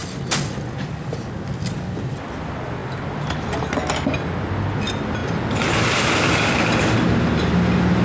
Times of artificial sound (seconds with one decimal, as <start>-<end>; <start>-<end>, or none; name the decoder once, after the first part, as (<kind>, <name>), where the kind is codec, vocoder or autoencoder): none